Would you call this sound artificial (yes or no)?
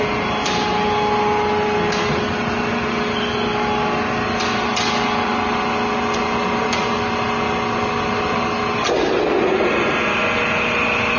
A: no